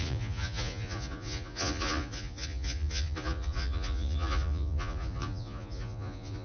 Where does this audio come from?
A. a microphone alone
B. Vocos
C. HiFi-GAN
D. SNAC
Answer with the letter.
B